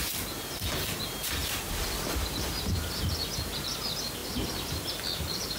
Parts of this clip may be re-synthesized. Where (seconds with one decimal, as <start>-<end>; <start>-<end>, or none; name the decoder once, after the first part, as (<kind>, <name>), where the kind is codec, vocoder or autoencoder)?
1.4-3.0 (vocoder, BigVGAN v2)